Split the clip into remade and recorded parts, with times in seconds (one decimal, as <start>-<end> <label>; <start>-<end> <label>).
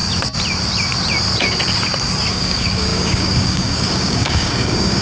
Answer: 0.0-2.3 recorded; 2.3-5.0 remade